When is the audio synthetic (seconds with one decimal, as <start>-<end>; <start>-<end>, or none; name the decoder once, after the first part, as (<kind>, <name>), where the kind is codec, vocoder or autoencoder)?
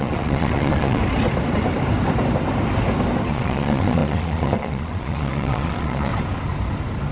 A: 0.0-1.0 (vocoder, Vocos); 3.3-6.1